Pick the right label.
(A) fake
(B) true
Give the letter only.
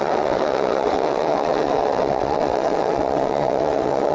A